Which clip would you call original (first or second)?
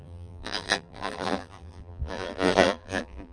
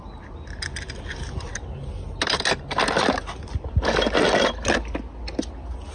second